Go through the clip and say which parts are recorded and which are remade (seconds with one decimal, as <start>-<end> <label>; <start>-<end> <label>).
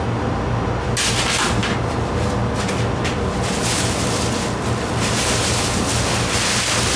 0.0-7.0 recorded